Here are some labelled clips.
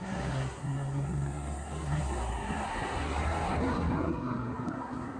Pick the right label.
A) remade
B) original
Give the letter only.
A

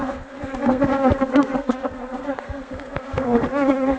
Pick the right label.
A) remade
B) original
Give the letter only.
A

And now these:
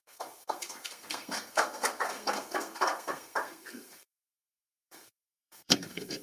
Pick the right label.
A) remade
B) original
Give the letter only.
A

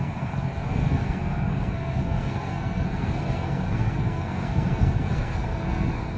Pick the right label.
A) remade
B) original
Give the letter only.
A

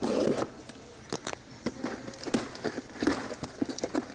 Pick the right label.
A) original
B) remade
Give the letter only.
A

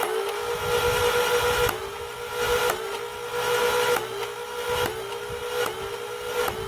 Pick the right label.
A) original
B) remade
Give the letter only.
A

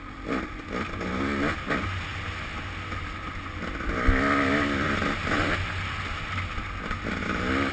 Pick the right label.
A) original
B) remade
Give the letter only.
A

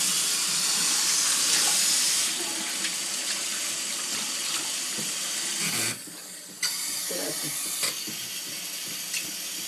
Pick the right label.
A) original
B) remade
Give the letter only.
A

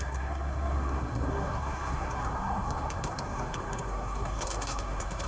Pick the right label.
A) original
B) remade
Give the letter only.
B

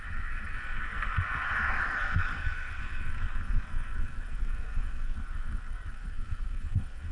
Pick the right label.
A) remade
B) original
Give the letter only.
A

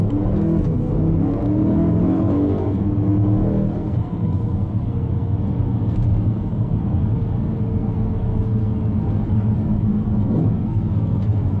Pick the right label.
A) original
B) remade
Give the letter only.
B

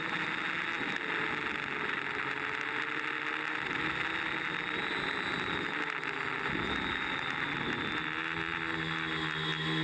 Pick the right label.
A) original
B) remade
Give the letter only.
A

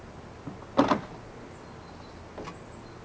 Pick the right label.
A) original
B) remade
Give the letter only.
A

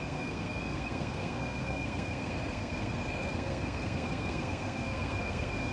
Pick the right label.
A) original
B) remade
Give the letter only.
B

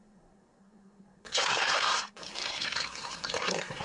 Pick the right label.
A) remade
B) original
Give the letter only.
A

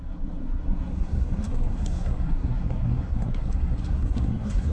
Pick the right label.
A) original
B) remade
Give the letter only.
B